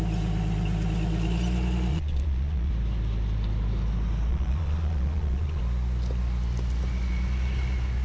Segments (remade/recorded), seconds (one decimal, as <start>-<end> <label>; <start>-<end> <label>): 0.0-1.9 recorded; 1.9-2.7 remade; 2.7-4.3 recorded; 4.3-5.6 remade; 5.6-8.0 recorded